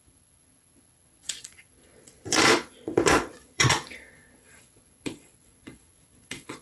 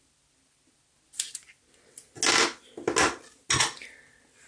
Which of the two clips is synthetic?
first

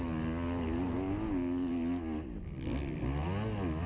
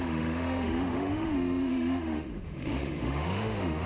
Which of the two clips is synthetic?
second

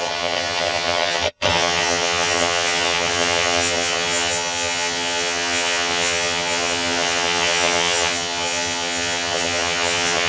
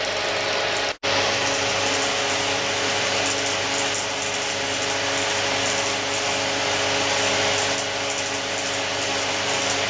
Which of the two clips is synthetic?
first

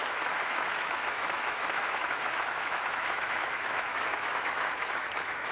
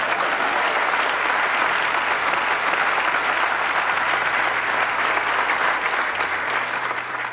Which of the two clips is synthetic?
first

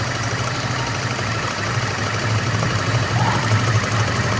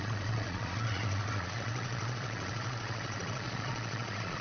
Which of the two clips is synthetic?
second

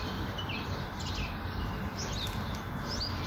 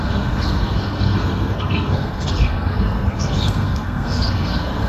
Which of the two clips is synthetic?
second